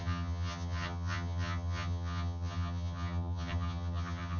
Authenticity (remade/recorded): remade